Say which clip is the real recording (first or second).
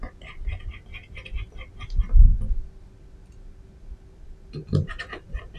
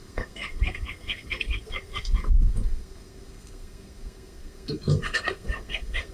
first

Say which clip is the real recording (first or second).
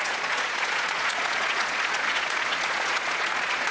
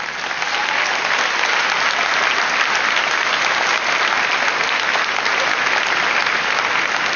second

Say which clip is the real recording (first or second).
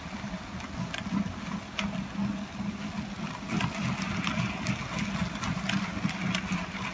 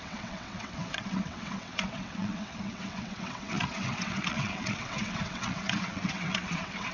first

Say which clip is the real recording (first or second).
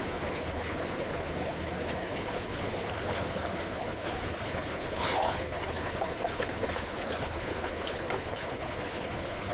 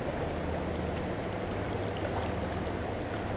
second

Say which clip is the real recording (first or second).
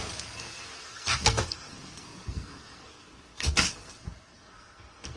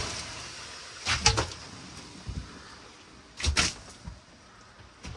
second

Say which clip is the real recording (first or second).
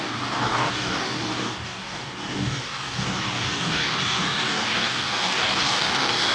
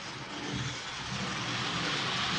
second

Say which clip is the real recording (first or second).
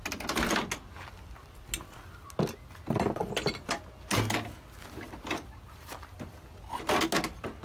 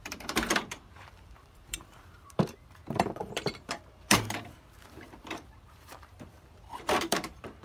first